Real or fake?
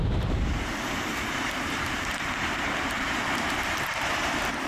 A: fake